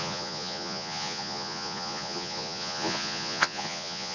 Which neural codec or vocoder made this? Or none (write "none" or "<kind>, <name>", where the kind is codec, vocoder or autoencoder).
vocoder, Vocos